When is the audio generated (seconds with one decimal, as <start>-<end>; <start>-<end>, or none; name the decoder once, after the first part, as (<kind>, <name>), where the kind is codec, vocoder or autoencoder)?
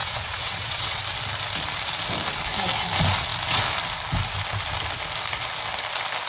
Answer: 0.0-1.0 (vocoder, WaveNeXt)